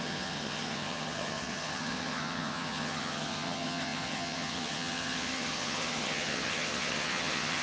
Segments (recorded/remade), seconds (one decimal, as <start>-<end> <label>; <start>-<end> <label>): 0.0-7.6 remade